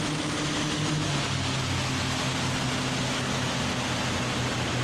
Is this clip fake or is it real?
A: real